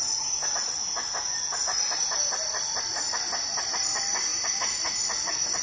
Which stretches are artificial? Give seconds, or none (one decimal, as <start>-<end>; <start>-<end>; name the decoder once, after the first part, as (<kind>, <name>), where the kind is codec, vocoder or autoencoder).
none